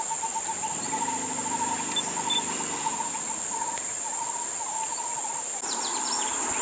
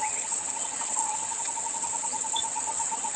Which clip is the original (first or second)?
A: first